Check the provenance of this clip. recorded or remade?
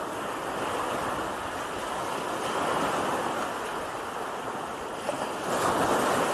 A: recorded